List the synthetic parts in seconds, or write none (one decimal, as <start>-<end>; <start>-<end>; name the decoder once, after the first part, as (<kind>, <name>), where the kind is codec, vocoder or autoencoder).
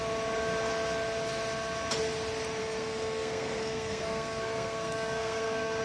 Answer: 2.6-5.8 (codec, SNAC)